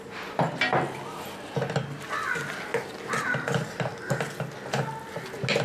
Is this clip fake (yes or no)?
no